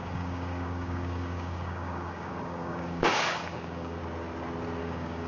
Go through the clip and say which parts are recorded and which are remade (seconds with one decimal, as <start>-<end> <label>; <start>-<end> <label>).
0.0-4.0 remade; 4.0-4.8 recorded; 4.8-5.3 remade